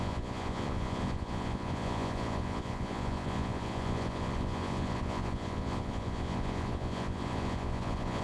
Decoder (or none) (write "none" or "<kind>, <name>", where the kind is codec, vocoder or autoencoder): vocoder, Vocos